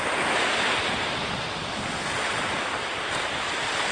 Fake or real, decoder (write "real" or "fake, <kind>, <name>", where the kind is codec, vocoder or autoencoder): real